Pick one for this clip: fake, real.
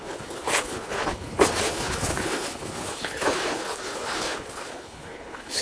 fake